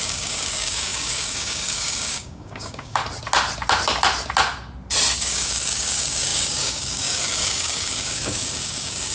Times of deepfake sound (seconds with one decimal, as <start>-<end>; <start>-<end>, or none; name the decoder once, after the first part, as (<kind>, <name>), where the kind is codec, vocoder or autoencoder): 0.0-3.0 (codec, DAC); 5.2-9.1